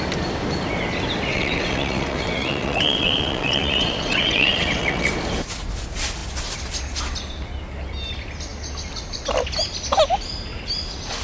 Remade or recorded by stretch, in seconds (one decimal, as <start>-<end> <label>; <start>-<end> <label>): 0.0-1.3 recorded; 1.3-5.1 remade; 5.1-11.2 recorded